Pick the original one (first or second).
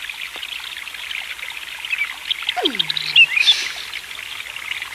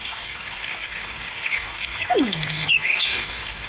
first